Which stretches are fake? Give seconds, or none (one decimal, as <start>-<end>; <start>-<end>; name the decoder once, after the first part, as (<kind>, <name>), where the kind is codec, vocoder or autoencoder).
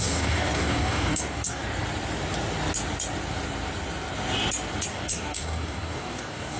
0.0-1.6 (codec, DAC); 4.9-6.6